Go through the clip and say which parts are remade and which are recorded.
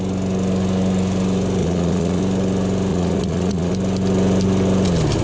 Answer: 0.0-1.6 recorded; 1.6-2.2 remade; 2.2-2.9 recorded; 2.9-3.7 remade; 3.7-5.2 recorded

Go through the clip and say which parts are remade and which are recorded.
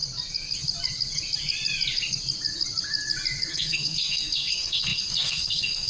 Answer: 0.0-3.5 recorded; 3.5-5.9 remade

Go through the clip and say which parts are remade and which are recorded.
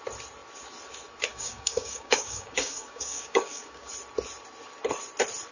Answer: 0.0-1.3 recorded; 1.3-3.9 remade; 3.9-5.5 recorded